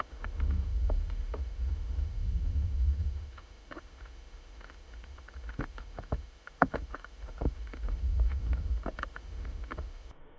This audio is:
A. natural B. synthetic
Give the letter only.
B